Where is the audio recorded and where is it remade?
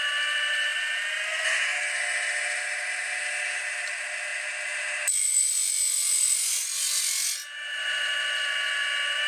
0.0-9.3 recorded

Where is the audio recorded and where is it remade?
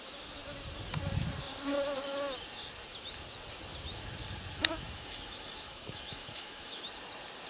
0.0-4.6 recorded; 4.6-6.8 remade; 6.8-7.5 recorded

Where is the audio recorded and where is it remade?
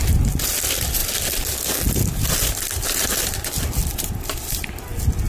0.0-5.3 recorded